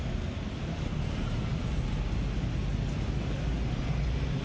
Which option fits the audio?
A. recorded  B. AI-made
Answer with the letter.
A